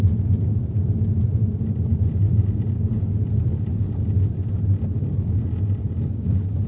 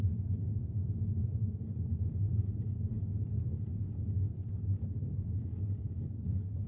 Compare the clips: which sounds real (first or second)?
first